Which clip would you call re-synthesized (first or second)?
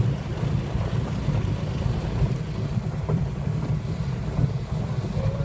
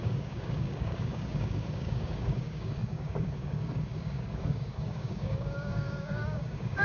second